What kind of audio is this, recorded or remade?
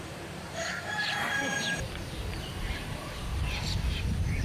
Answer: remade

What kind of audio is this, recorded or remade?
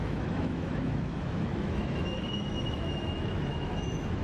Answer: remade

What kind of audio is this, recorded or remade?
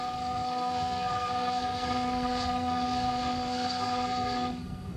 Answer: remade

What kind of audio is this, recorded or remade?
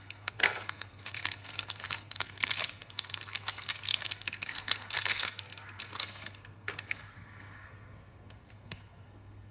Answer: remade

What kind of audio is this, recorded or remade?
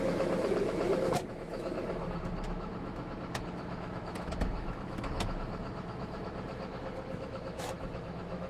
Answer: remade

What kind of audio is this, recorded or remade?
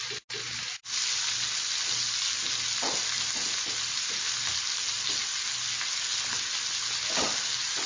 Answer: recorded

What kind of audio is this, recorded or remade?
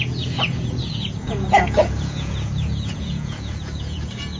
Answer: remade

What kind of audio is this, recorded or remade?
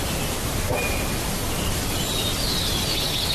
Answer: recorded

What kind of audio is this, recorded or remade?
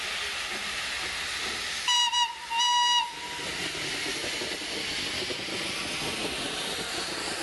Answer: recorded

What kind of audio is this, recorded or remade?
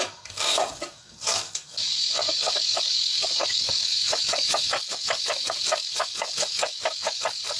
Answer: remade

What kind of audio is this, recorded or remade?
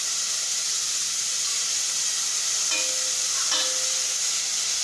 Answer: recorded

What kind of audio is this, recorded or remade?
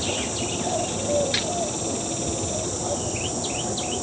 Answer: recorded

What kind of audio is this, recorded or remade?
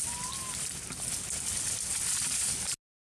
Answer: recorded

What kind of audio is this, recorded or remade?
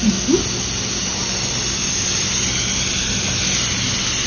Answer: recorded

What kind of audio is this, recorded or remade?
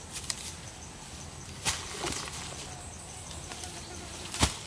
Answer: recorded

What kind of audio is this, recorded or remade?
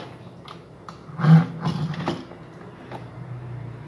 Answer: recorded